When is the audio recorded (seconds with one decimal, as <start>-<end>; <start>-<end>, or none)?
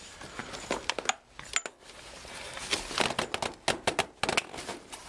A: 0.0-5.1